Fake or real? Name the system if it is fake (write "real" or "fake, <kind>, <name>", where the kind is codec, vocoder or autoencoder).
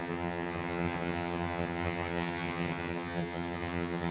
fake, vocoder, HiFi-GAN